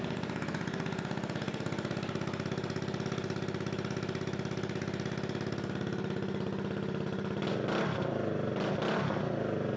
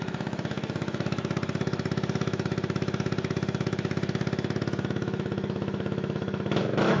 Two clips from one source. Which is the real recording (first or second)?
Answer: first